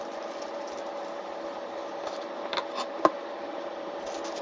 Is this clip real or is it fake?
real